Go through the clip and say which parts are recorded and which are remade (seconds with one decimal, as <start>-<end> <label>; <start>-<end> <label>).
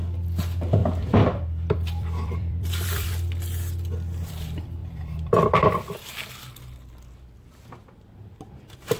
0.0-0.8 recorded; 0.8-3.1 remade; 3.1-4.8 recorded; 4.8-6.6 remade; 6.6-9.0 recorded